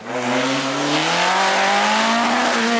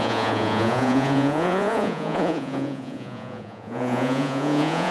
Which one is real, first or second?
first